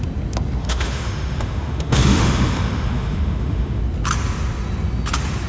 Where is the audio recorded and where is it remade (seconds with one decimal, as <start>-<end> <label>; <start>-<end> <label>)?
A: 0.0-0.6 recorded; 0.6-3.8 remade; 3.8-5.5 recorded